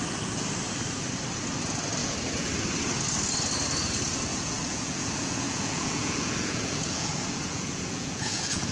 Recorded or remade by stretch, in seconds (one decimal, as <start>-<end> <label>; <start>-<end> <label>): 0.0-2.0 recorded; 2.0-2.5 remade; 2.5-4.3 recorded; 4.3-8.7 remade